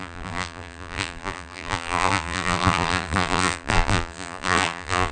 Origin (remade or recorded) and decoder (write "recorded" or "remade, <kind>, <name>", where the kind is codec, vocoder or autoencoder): remade, vocoder, BigVGAN v2